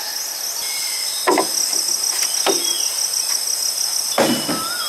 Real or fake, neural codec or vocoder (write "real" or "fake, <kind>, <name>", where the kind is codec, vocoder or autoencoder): real